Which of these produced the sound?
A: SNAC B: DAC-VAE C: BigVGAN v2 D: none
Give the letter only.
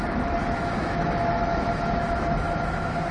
B